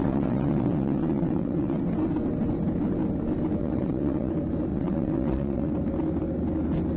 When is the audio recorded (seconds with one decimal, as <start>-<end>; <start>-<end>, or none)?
1.8-3.6; 4.3-4.7; 5.7-7.0